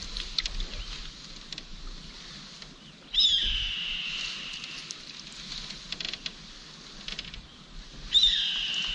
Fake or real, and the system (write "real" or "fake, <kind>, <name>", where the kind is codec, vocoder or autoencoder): real